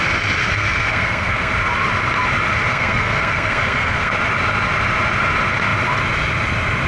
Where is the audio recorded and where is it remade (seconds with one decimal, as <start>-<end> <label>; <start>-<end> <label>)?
0.0-0.4 recorded; 0.4-1.5 remade; 1.5-2.7 recorded; 2.7-4.1 remade; 4.1-6.9 recorded